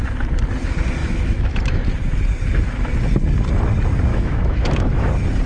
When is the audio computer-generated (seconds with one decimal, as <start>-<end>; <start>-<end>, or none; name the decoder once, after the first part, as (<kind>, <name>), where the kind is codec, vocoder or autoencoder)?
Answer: 1.0-1.6 (autoencoder, DAC-VAE); 4.1-5.1